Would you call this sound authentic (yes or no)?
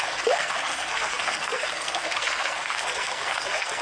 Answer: no